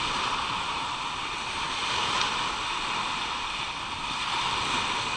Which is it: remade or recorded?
recorded